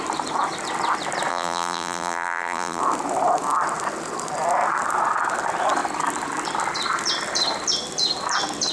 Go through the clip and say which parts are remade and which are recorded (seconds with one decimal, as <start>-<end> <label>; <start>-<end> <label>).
0.0-1.3 recorded; 1.3-2.8 remade; 2.8-8.7 recorded